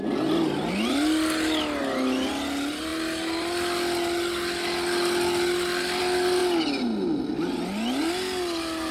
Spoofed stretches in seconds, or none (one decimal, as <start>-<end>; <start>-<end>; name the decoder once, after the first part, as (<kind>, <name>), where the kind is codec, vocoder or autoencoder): none